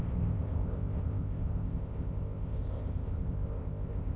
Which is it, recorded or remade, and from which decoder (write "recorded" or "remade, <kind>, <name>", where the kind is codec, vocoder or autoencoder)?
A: remade, codec, ZipCodec